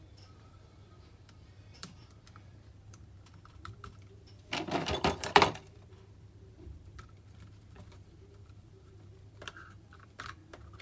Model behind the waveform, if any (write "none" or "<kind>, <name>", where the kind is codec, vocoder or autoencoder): vocoder, BigVGAN v2